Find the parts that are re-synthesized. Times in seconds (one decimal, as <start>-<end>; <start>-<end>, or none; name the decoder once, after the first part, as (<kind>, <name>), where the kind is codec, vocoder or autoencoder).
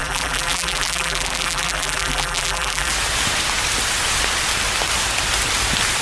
0.0-2.9 (vocoder, BigVGAN v2)